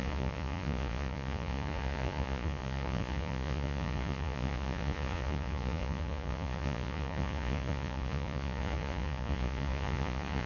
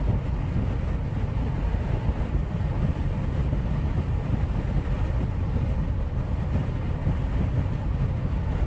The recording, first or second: second